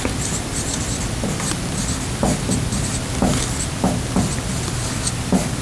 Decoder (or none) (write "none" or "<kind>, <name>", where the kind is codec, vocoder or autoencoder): none